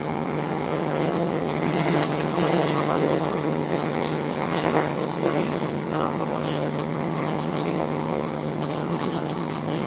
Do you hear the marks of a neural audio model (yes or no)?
yes